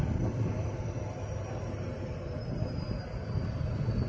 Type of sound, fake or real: real